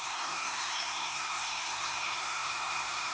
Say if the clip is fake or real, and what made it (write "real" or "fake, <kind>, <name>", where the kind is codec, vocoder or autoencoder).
fake, codec, SNAC